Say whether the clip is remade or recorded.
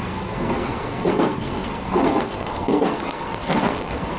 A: remade